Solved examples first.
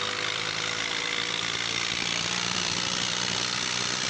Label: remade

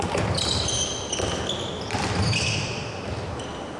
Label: recorded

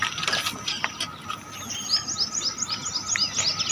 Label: recorded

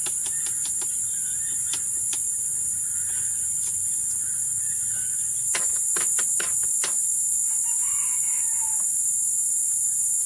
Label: recorded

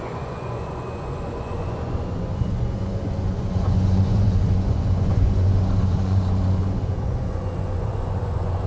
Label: remade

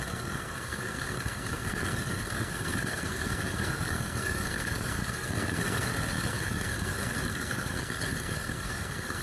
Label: remade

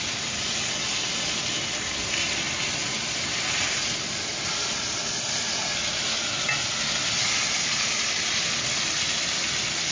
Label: recorded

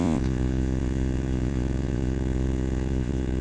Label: remade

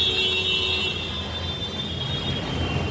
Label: recorded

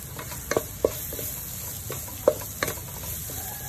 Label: recorded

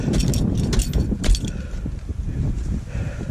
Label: recorded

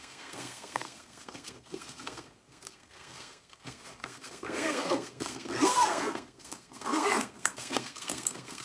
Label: remade